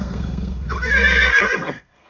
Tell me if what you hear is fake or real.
fake